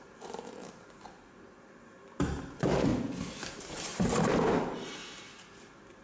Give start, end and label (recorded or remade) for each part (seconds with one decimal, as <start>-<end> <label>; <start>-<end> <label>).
0.0-2.9 remade; 2.9-3.4 recorded; 3.4-6.0 remade